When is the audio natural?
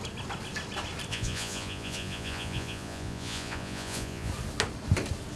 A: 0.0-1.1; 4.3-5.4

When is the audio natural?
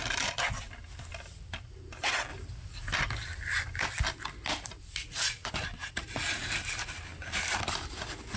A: 0.0-8.4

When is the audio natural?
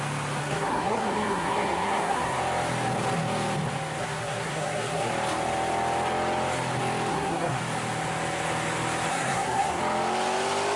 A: 0.0-0.4; 2.4-4.0; 5.1-7.1; 7.6-9.1; 9.8-10.8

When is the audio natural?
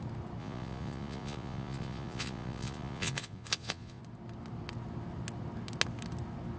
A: 0.0-0.4; 4.0-6.6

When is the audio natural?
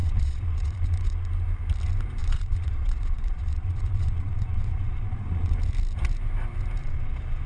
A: 1.3-2.2; 5.6-6.8